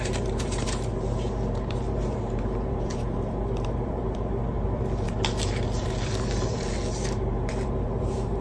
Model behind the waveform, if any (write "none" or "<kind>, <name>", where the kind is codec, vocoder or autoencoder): vocoder, BigVGAN v2